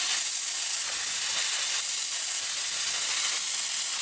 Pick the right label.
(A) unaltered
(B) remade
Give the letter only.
A